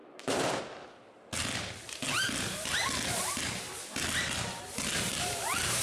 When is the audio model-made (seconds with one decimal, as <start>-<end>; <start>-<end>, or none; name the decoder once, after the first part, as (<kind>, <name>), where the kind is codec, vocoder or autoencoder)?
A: 0.0-0.6 (vocoder, BigVGAN v2)

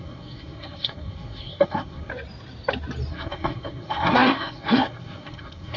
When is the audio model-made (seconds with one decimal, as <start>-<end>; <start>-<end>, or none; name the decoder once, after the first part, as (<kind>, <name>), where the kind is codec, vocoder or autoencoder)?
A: 0.0-2.1 (codec, SNAC); 3.1-5.8

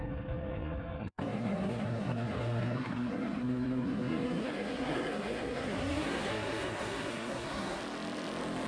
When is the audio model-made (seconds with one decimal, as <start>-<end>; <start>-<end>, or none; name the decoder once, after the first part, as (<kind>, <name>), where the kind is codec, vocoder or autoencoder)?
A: 0.0-7.8 (codec, SNAC)